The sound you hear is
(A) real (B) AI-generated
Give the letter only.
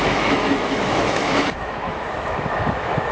B